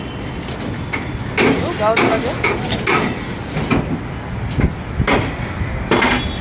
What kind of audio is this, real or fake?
real